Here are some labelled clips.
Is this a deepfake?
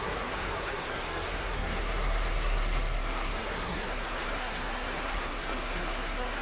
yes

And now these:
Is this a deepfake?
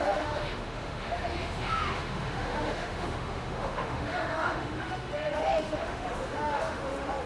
yes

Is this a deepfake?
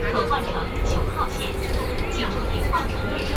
yes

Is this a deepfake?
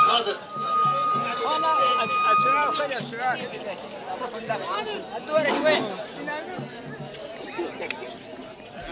no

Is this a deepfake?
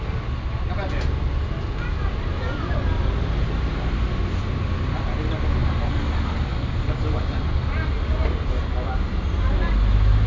no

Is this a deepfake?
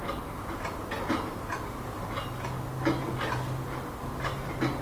no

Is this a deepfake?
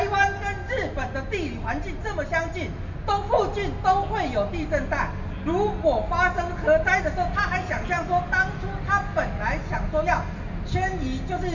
no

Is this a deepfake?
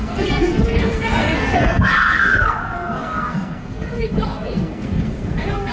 yes